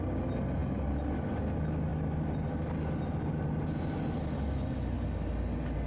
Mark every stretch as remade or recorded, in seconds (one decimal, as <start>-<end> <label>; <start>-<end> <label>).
0.0-5.9 recorded